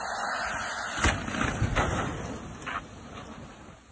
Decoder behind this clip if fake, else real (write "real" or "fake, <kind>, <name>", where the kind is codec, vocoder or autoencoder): real